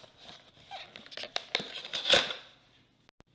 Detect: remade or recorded recorded